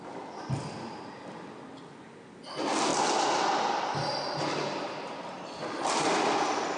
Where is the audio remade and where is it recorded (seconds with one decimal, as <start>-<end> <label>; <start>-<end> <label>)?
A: 0.0-6.8 recorded